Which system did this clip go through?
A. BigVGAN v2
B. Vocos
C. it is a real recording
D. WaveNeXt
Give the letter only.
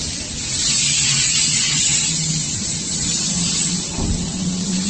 D